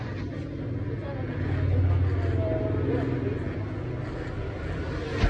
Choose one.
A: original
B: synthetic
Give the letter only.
A